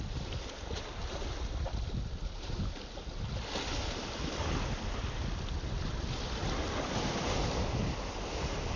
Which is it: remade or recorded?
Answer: recorded